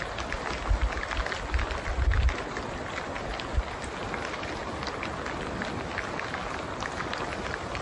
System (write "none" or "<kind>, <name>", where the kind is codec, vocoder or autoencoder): none